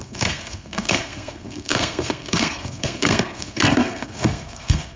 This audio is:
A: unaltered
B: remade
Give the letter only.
B